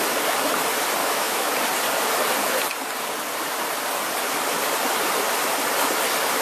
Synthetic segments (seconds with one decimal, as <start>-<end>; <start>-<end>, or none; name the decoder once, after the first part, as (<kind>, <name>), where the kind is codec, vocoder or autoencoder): 1.0-1.5 (autoencoder, DAC-VAE)